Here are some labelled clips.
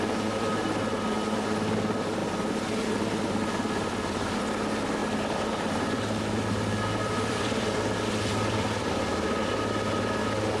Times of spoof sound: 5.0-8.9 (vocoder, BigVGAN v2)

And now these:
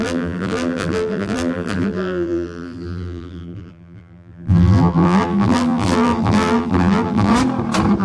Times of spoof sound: 0.0-7.3 (vocoder, BigVGAN v2)